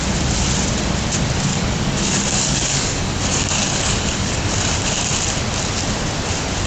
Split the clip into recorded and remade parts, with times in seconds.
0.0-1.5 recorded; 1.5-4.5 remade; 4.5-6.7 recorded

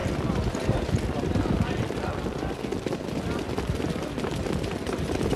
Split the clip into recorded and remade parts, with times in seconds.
0.0-5.4 recorded

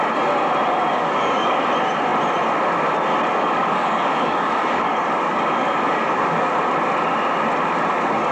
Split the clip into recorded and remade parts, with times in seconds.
0.0-0.9 recorded; 0.9-1.6 remade; 1.6-3.3 recorded; 3.3-6.5 remade; 6.5-8.3 recorded

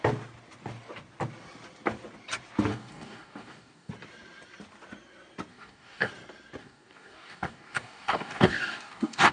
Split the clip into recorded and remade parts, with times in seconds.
0.0-2.7 recorded; 2.7-3.9 remade; 3.9-5.5 recorded; 5.5-6.1 remade; 6.1-6.6 recorded; 6.6-9.3 remade

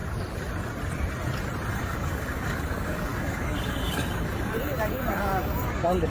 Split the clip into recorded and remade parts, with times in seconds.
0.0-1.7 recorded; 1.7-6.1 remade

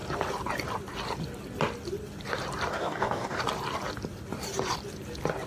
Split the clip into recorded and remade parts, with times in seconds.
0.0-2.7 recorded; 2.7-3.4 remade; 3.4-5.5 recorded

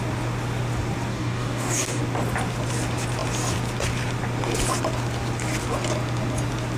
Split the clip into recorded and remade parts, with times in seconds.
0.0-1.1 recorded; 1.1-2.0 remade; 2.0-6.8 recorded